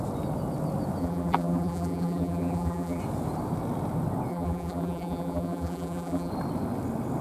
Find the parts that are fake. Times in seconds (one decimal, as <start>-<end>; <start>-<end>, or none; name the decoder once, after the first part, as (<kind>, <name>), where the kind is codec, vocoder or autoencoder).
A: 1.0-3.0 (vocoder, BigVGAN v2); 4.3-6.3